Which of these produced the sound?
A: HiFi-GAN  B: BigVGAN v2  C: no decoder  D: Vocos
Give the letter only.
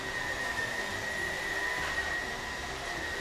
B